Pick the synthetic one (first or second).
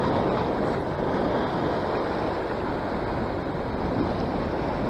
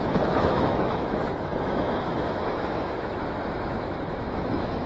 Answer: second